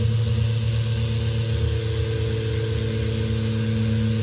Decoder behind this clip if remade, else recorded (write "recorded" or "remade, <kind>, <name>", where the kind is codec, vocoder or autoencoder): recorded